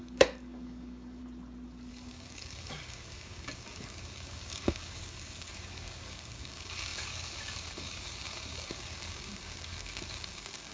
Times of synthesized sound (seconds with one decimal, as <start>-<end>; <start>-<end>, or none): 0.0-1.2; 1.9-10.7